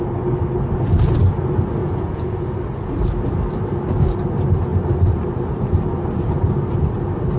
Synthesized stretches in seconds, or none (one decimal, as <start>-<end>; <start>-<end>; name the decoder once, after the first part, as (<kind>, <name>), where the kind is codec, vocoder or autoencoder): 1.8-2.5 (vocoder, Vocos)